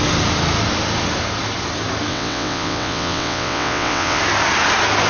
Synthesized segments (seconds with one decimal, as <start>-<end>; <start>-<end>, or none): 2.1-4.2